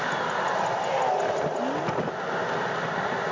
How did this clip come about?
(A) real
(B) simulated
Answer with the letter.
A